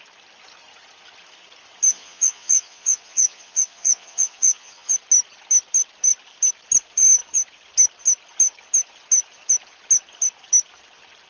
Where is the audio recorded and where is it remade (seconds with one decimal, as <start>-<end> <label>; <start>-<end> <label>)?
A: 0.0-1.9 recorded; 1.9-4.9 remade; 4.9-11.3 recorded